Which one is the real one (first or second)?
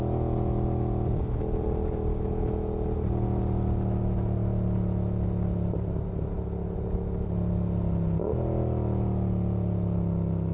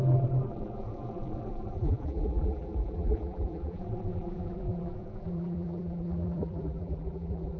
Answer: first